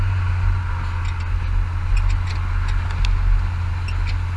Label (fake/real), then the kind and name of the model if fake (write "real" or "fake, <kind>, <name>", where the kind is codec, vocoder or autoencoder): real